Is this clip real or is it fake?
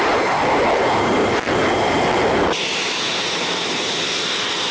real